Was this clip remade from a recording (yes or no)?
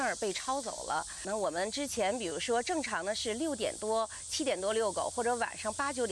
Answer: no